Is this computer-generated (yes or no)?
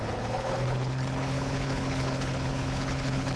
yes